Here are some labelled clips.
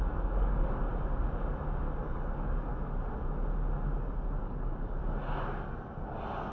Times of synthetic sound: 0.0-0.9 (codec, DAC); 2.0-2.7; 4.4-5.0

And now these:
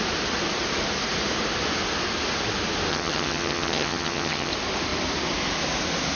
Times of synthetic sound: 2.9-4.5 (vocoder, HiFi-GAN)

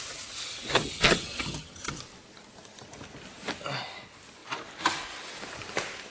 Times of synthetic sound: 0.7-2.0 (vocoder, HiFi-GAN)

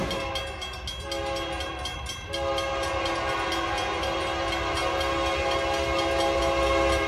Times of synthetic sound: none

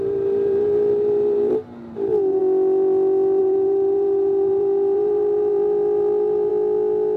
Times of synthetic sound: 0.0-2.4 (vocoder, BigVGAN v2); 3.4-6.5